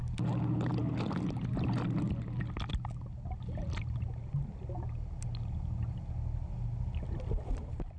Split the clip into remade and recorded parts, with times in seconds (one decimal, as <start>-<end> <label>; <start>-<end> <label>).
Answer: 0.0-8.0 recorded